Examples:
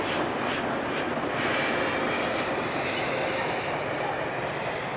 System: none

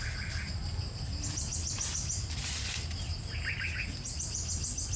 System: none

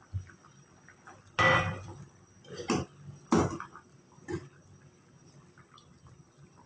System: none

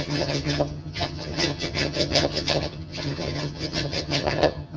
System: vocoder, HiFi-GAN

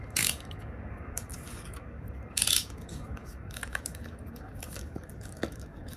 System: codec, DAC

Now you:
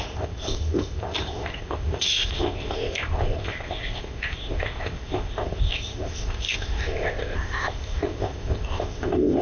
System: codec, ZipCodec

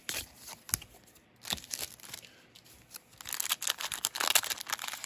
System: none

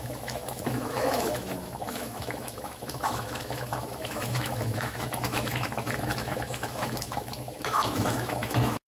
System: autoencoder, DAC-VAE